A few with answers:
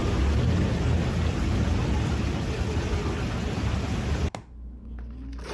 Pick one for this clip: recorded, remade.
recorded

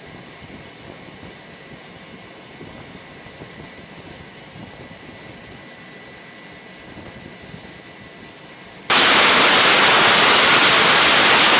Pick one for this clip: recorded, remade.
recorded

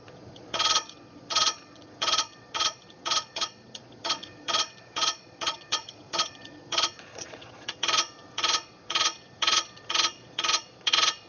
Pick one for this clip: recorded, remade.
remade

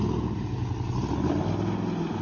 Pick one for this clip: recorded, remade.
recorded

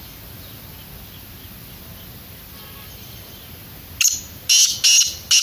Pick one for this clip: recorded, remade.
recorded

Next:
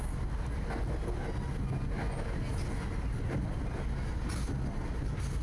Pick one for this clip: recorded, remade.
recorded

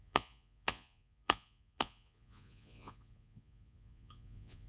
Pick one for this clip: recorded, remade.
remade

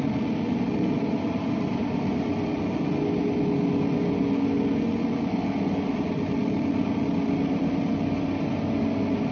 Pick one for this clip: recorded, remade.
recorded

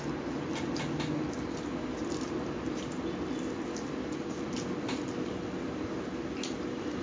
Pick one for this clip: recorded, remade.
recorded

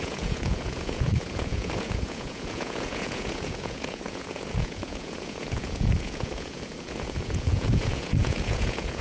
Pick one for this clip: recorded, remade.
remade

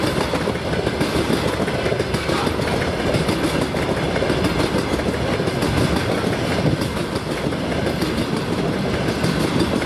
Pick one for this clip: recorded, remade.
recorded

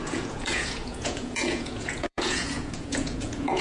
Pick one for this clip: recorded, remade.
remade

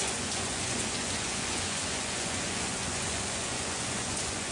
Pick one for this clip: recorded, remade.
remade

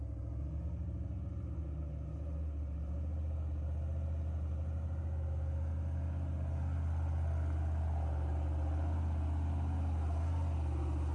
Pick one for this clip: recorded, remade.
recorded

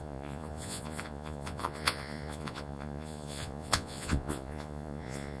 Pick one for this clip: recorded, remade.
remade